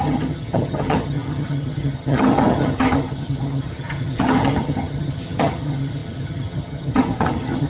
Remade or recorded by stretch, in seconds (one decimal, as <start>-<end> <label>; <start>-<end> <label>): 0.0-7.7 remade